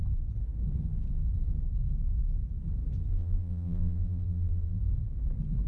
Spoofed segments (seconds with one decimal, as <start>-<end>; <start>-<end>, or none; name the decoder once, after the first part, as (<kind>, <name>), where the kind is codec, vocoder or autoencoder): 3.1-4.8 (vocoder, BigVGAN v2)